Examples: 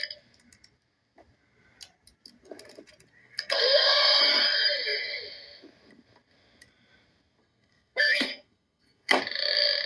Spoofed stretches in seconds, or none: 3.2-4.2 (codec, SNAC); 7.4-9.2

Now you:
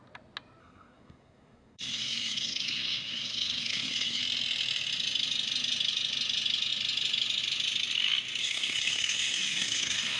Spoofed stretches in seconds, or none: 0.6-4.2 (codec, SNAC); 8.4-10.2